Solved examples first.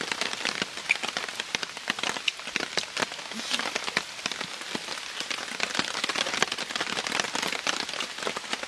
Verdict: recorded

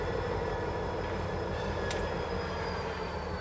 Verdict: remade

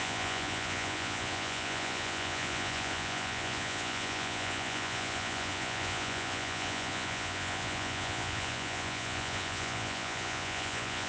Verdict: remade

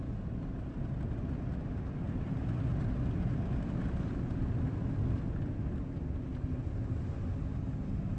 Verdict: recorded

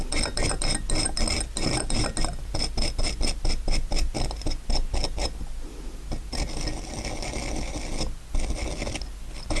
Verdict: recorded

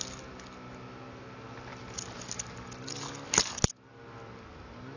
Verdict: recorded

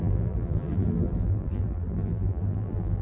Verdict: remade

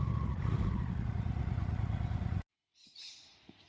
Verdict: remade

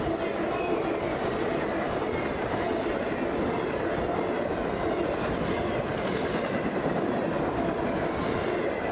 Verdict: recorded